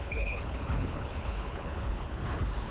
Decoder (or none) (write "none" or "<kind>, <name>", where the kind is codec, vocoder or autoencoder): codec, HILCodec